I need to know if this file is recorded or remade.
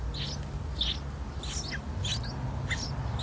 recorded